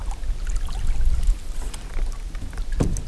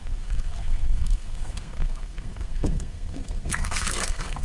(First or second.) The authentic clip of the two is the first